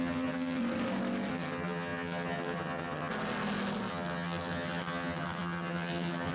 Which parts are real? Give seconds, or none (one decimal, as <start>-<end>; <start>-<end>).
0.6-1.3; 3.1-3.9